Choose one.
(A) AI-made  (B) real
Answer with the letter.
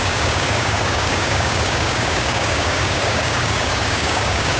A